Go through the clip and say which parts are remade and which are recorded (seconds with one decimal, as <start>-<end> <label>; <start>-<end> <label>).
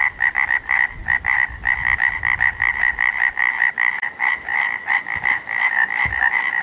0.0-6.6 recorded